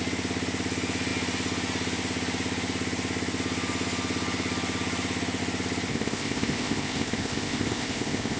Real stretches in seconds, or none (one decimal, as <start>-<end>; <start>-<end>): 0.0-5.9